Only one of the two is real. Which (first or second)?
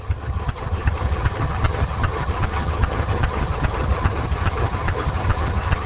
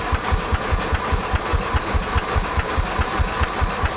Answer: second